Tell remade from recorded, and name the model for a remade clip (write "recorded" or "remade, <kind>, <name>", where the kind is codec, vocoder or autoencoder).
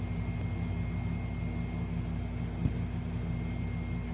recorded